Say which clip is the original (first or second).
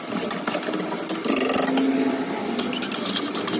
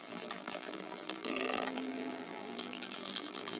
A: first